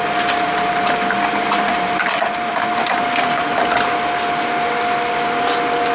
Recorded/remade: recorded